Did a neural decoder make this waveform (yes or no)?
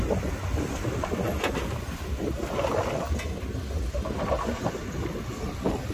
no